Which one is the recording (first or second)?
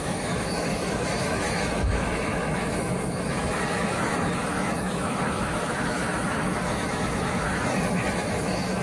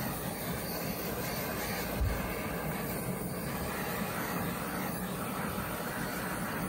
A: second